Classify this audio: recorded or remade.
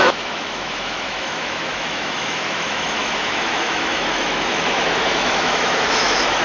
remade